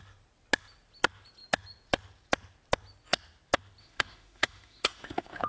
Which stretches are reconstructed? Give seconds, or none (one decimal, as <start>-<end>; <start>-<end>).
3.8-5.5